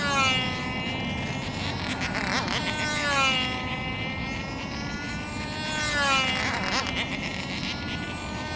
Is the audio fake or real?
real